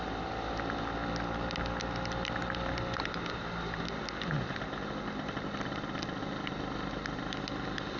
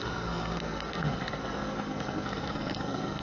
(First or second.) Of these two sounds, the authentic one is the first